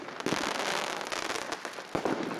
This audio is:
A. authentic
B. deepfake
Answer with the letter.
A